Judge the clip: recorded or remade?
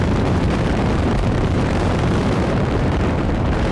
remade